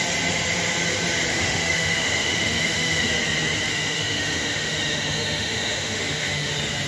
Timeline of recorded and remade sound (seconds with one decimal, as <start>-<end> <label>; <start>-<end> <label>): 0.0-1.3 recorded; 1.3-3.1 remade; 3.1-3.7 recorded; 3.7-6.5 remade; 6.5-6.9 recorded